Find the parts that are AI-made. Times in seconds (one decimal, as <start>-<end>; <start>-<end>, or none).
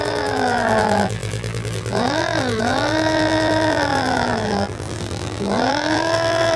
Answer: 0.0-6.6